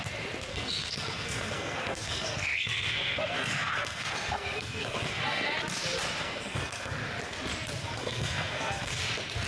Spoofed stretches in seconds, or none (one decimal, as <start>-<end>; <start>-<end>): 0.5-5.2; 6.2-6.9; 7.8-9.0